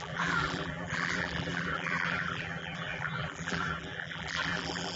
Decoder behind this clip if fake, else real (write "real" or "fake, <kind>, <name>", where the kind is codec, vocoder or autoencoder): fake, vocoder, BigVGAN v2